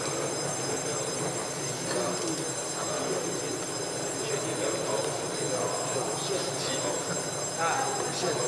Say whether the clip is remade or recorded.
recorded